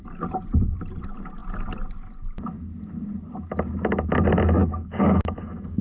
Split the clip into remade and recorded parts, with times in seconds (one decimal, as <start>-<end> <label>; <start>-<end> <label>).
0.0-4.6 recorded; 4.6-5.8 remade